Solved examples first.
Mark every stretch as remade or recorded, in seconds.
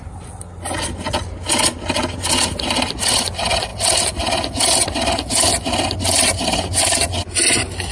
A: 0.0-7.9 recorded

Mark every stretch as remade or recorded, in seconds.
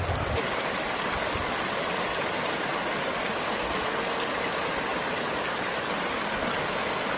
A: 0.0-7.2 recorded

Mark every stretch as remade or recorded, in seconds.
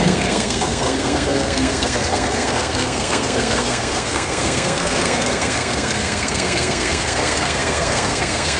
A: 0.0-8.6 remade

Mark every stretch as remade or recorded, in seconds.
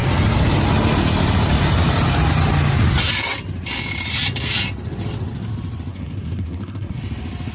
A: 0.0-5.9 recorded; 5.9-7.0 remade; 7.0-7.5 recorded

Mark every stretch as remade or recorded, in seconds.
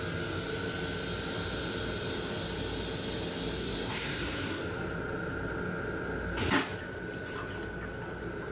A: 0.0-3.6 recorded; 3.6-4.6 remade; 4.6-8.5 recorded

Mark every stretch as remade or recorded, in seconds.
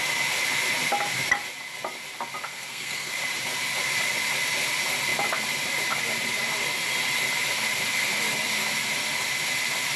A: 0.0-2.5 recorded; 2.5-3.1 remade; 3.1-10.0 recorded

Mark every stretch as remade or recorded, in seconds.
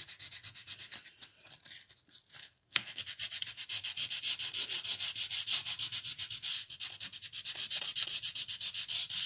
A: 0.0-2.4 recorded; 2.4-3.0 remade; 3.0-9.3 recorded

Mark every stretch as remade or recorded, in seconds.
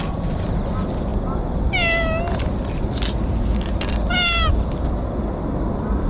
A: 0.0-6.1 recorded